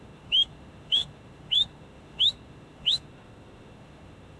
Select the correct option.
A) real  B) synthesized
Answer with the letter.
B